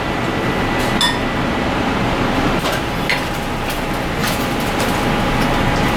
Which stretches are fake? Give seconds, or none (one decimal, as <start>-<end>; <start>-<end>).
none